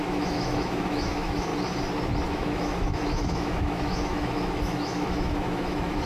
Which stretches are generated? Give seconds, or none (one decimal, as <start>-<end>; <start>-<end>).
0.0-1.5; 2.3-6.1